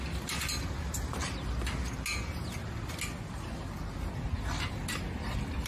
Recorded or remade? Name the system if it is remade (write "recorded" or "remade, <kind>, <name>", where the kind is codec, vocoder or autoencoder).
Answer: recorded